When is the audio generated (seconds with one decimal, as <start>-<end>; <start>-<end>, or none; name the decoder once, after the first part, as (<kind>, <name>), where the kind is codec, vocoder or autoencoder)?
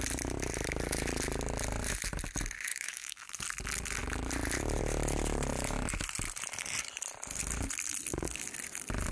2.7-3.3 (autoencoder, DAC-VAE)